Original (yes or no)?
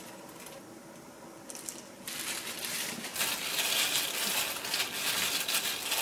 yes